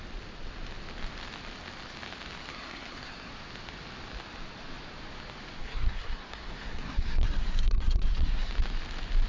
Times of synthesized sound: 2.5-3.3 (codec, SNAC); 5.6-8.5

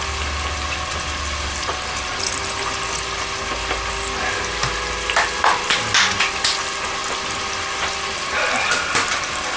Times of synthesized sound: none

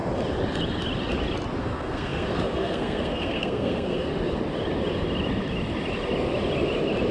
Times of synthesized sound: 1.6-4.1 (codec, SNAC)

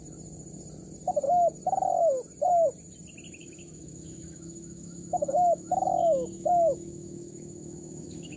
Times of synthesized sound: 3.4-8.4 (autoencoder, DAC-VAE)

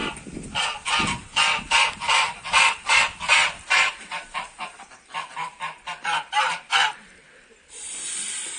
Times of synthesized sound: 0.0-5.6 (vocoder, BigVGAN v2); 6.4-8.6

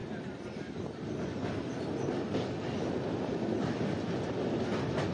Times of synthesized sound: 0.0-1.3 (vocoder, BigVGAN v2)

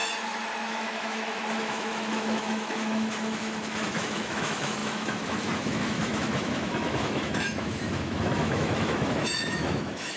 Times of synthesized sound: 0.7-10.2 (autoencoder, DAC-VAE)